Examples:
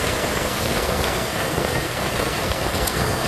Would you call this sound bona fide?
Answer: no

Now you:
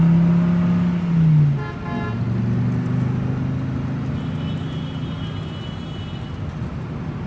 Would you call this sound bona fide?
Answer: yes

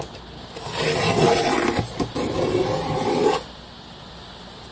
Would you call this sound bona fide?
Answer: yes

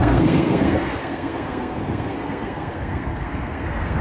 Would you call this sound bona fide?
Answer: no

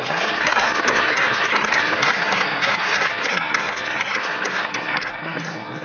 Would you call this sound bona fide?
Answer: no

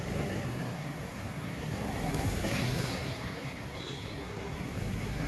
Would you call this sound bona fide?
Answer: no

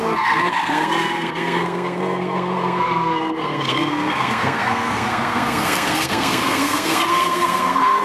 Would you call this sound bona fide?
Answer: no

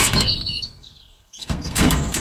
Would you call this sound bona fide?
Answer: no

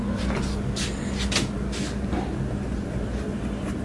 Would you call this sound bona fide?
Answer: yes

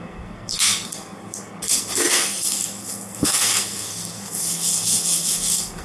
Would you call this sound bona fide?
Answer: no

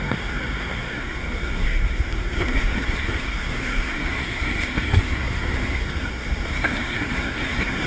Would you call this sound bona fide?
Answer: no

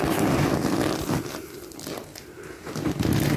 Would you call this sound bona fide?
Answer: yes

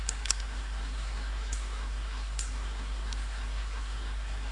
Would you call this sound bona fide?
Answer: no